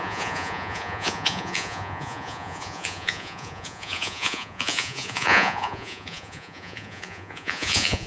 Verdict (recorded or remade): remade